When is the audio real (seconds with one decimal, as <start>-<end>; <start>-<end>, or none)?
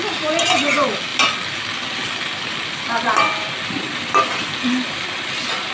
0.0-1.1; 4.5-5.7